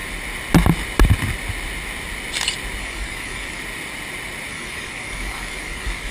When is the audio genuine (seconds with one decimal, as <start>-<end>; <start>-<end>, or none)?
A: 0.0-2.8; 3.6-4.5